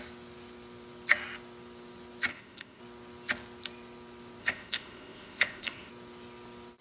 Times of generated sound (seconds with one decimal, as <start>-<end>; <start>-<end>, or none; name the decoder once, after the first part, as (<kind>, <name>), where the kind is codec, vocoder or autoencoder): 2.3-2.8 (codec, ZipCodec); 4.4-5.9